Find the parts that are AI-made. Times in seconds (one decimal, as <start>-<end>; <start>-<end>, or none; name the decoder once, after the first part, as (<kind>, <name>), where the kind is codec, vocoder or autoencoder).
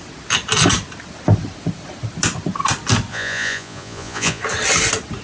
3.1-4.4 (vocoder, Vocos)